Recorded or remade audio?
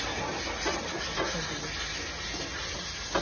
recorded